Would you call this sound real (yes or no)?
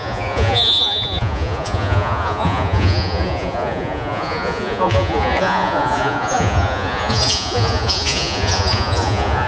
no